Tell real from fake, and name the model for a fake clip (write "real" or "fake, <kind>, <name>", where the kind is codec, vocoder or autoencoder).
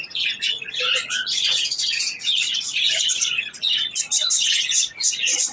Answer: fake, vocoder, Vocos